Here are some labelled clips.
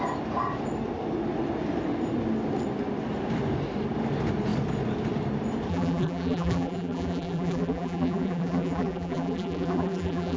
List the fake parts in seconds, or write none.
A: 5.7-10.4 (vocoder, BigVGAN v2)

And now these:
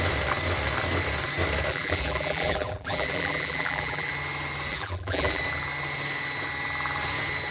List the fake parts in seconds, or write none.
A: 1.7-4.1 (vocoder, BigVGAN v2); 4.7-5.4

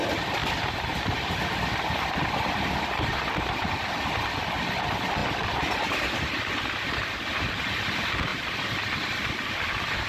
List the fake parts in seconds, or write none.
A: 0.4-1.4 (vocoder, BigVGAN v2)

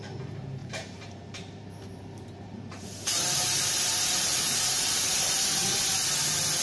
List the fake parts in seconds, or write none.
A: 0.0-5.6 (vocoder, BigVGAN v2)

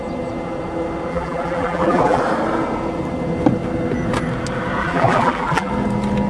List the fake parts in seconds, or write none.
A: 1.1-2.2 (vocoder, BigVGAN v2); 4.8-5.7

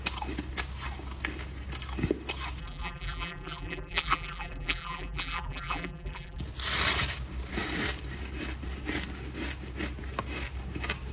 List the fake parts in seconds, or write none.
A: 2.6-6.4 (vocoder, BigVGAN v2)

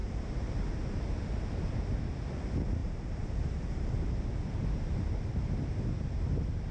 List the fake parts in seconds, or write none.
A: 2.8-6.7 (vocoder, BigVGAN v2)

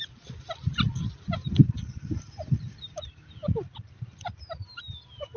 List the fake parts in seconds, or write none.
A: 3.4-4.8 (vocoder, BigVGAN v2)